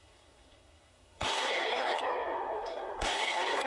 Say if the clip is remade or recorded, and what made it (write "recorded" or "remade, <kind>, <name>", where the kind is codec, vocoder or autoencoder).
remade, codec, SNAC